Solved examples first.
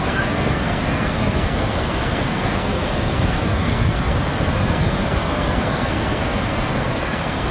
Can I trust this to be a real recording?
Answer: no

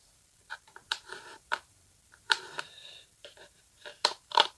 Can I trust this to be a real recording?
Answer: no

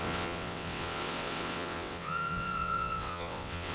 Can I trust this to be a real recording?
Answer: no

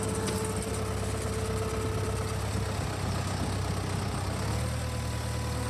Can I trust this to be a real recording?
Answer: yes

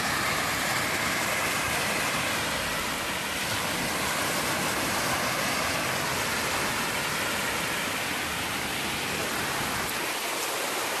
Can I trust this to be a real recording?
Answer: yes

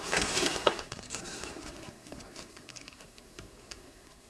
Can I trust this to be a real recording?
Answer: no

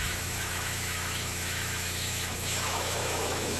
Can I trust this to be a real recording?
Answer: no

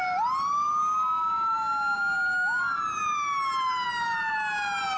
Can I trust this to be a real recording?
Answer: yes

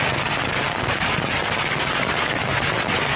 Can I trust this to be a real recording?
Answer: yes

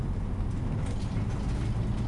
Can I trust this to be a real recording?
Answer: yes